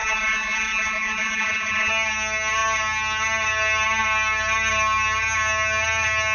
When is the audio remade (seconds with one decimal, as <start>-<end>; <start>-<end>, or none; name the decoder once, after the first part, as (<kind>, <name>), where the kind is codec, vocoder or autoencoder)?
0.0-1.9 (vocoder, Vocos)